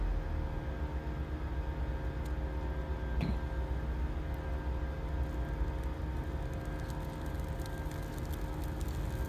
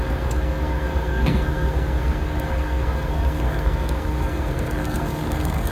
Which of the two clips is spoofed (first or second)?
second